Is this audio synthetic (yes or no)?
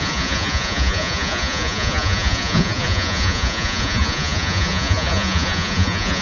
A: yes